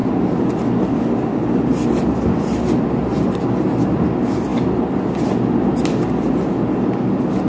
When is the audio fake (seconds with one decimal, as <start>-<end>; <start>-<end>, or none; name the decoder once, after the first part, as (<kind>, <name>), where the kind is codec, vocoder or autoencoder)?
none